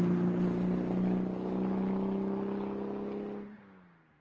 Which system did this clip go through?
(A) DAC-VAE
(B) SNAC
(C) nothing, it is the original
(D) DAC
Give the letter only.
C